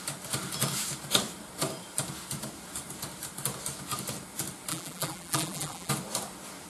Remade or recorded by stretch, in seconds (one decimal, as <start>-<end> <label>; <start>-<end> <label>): 0.0-4.7 recorded; 4.7-5.9 remade; 5.9-6.7 recorded